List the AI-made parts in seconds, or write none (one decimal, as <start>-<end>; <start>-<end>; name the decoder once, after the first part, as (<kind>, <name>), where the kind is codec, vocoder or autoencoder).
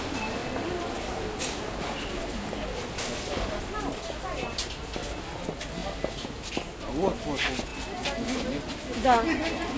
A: none